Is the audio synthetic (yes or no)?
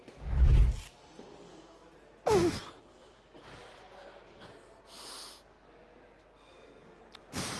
no